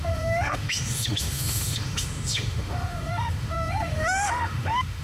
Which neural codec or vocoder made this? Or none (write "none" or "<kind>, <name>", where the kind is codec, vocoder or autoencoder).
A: autoencoder, DAC-VAE